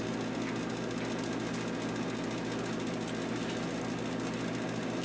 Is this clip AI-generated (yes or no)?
no